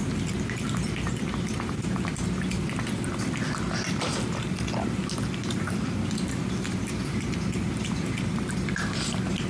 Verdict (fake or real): real